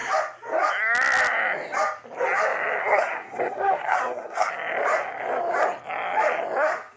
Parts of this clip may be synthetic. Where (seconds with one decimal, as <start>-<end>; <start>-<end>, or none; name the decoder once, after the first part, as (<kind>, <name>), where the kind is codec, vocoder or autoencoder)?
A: 2.8-4.5 (codec, SNAC)